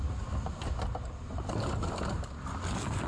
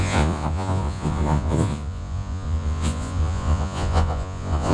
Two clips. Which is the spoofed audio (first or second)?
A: second